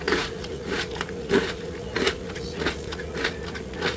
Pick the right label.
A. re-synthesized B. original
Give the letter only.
A